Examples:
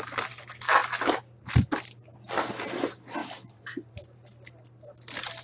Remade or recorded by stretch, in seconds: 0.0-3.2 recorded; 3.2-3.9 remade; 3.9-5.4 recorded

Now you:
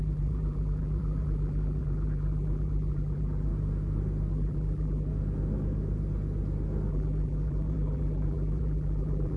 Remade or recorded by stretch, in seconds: 0.0-3.5 remade; 3.5-4.3 recorded; 4.3-5.1 remade; 5.1-6.9 recorded; 6.9-9.4 remade